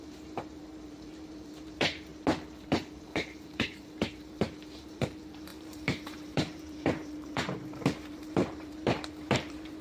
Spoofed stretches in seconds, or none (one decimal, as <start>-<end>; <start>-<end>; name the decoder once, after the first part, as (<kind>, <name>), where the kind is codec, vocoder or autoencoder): 0.0-2.1 (vocoder, BigVGAN v2); 2.8-9.8